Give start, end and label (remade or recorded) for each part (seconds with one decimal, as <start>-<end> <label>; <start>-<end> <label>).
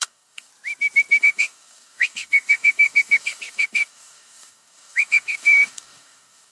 0.0-0.5 remade; 0.5-1.2 recorded; 1.2-6.5 remade